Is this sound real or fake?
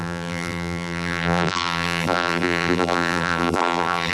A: fake